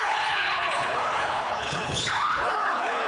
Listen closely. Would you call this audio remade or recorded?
remade